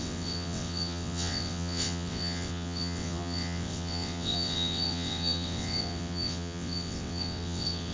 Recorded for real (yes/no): no